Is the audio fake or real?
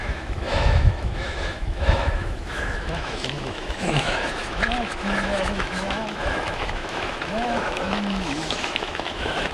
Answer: fake